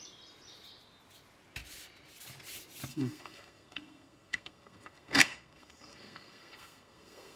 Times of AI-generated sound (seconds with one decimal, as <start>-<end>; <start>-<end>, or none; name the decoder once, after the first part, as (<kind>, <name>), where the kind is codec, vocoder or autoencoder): 2.9-7.4 (codec, SNAC)